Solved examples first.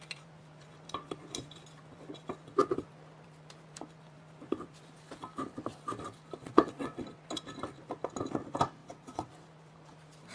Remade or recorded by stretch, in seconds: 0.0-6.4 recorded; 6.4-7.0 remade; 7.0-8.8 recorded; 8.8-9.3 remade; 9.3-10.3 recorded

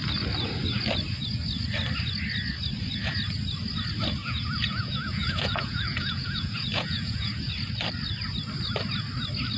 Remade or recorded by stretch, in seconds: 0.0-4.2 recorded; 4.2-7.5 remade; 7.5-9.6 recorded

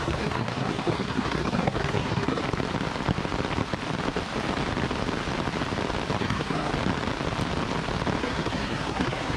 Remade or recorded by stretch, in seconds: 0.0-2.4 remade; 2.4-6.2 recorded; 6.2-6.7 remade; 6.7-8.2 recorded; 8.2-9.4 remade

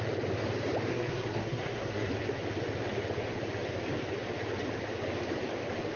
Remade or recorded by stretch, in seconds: 0.0-0.9 recorded; 0.9-2.1 remade; 2.1-6.0 recorded

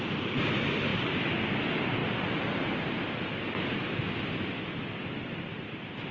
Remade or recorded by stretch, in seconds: 0.0-6.1 recorded

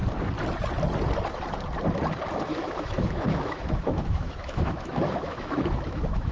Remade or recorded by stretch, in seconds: 0.0-2.5 recorded; 2.5-6.3 remade